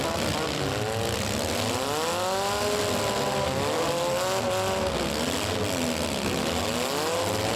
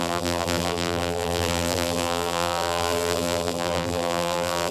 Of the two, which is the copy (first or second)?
second